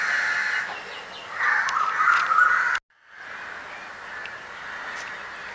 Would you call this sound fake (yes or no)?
no